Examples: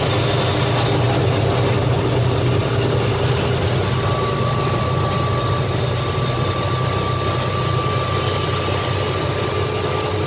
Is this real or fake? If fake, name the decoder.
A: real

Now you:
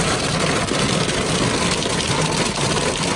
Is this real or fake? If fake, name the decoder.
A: real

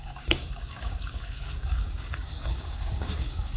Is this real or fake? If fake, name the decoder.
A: fake, codec, DAC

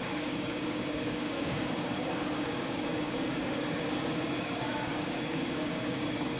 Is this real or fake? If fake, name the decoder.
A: fake, codec, DAC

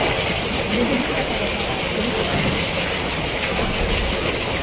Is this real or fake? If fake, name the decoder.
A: real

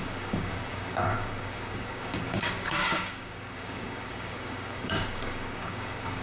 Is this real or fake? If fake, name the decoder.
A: fake, codec, DAC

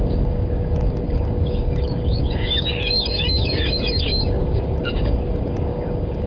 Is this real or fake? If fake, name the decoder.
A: fake, codec, DAC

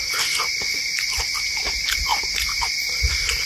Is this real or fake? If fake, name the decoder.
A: real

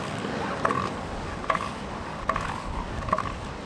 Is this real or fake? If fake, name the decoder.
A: fake, codec, DAC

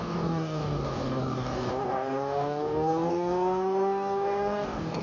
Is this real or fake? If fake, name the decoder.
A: fake, codec, DAC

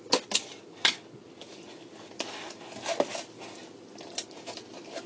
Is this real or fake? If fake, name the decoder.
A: real